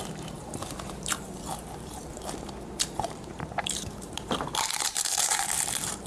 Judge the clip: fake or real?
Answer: fake